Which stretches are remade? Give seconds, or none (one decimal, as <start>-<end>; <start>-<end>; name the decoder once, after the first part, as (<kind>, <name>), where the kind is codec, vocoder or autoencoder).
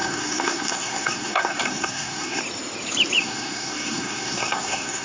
0.0-2.4 (codec, SNAC); 3.2-5.0